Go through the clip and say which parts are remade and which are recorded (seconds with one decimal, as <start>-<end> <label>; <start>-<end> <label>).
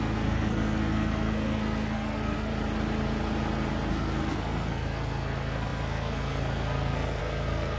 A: 0.0-2.5 remade; 2.5-3.9 recorded; 3.9-7.8 remade